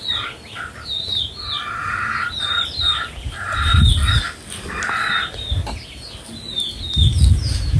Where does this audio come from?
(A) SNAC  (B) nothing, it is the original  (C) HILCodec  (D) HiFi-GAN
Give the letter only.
B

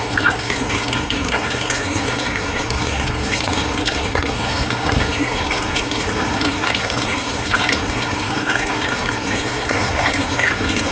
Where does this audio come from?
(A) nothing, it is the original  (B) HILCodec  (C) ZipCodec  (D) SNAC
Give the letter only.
D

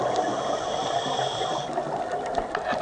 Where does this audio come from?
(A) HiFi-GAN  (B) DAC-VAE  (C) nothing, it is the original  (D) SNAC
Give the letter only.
C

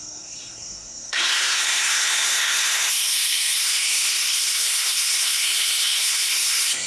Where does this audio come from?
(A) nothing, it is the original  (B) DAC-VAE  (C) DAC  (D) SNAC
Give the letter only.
D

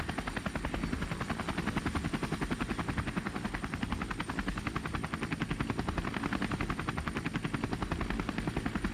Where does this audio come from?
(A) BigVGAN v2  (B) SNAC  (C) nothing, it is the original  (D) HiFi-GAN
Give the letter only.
C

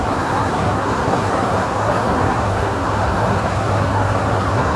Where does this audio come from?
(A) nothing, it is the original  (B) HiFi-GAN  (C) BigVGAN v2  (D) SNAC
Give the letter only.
D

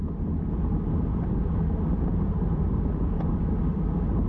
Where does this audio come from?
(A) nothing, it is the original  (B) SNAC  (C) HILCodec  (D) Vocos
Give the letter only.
A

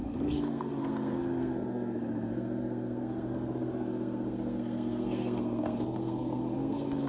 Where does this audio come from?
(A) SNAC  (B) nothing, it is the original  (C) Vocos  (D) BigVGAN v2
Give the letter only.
A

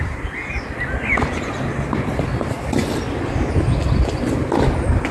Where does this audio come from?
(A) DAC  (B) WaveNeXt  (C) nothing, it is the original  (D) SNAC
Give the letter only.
C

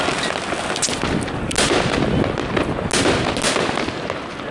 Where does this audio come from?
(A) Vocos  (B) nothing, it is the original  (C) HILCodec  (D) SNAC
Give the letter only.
B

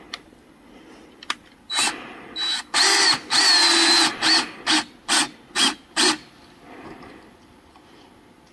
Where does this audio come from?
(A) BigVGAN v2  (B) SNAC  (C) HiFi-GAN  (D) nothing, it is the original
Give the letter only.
D